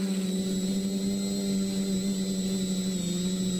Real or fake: real